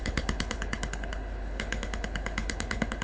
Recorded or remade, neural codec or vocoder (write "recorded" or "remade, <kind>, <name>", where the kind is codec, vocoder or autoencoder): remade, codec, HILCodec